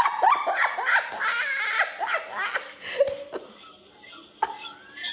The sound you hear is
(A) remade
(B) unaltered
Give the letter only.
B